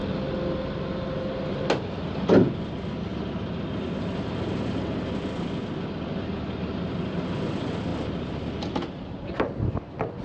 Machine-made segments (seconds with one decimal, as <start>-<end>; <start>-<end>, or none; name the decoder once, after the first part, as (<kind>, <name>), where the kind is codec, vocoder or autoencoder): none

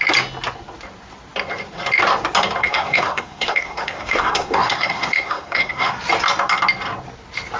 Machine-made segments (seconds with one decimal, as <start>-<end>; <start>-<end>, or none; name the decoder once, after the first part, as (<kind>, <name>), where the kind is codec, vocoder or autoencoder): 2.6-5.9 (codec, SNAC)

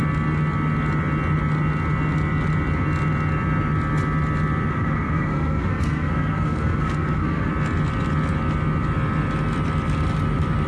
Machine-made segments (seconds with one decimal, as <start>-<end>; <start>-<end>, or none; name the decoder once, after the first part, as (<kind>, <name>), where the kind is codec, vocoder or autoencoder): 4.7-7.5 (codec, SNAC)

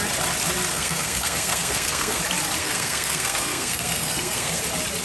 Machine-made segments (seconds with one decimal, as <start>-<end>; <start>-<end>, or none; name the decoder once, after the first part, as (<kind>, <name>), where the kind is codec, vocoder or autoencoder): 0.7-2.2 (codec, SNAC); 2.6-4.6

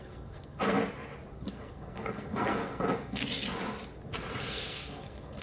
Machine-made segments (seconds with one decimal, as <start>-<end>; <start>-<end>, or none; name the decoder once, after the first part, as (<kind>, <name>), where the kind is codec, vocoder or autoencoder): 0.0-0.8 (codec, SNAC); 1.5-3.2; 4.4-5.4

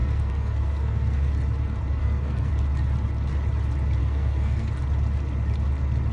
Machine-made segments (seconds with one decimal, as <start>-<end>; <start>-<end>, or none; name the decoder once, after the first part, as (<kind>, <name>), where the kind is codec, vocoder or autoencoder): 0.0-1.3 (codec, SNAC); 2.0-2.5; 4.0-4.7